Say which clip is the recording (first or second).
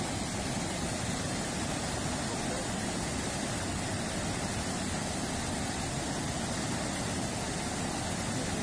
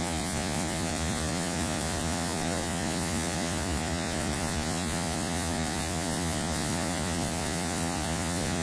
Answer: first